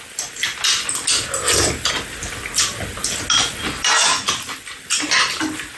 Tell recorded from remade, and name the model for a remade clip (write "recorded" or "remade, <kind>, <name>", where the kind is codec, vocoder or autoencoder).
recorded